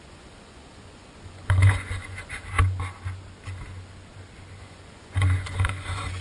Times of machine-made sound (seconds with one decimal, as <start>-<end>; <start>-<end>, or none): 0.0-2.4; 4.6-6.2